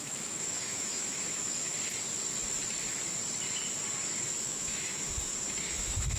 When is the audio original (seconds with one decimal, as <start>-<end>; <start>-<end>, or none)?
1.7-4.4